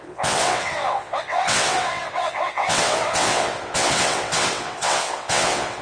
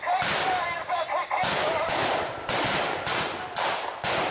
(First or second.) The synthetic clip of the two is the first